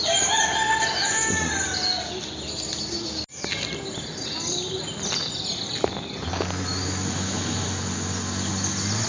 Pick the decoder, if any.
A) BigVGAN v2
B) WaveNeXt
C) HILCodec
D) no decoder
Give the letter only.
D